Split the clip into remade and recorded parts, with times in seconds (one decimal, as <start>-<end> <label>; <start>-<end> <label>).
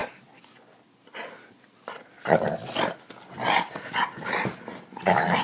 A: 0.0-5.4 recorded